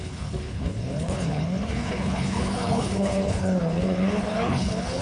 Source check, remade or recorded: remade